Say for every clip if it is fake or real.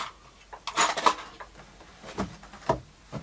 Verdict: real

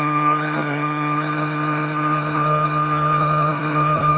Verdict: fake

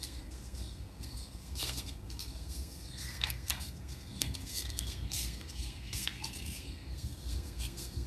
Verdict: fake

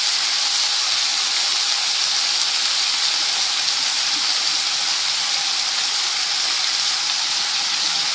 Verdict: real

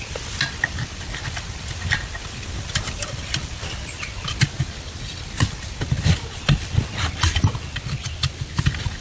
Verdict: real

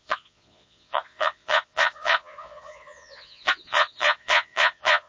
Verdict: fake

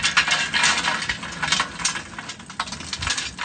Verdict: real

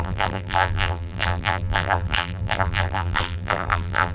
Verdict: fake